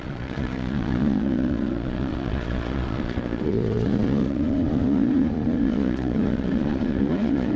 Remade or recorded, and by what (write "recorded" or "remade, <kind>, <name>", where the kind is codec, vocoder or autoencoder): remade, vocoder, Vocos